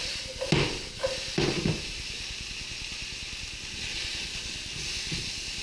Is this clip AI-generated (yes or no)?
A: no